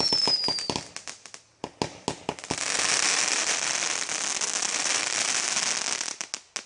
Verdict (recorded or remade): recorded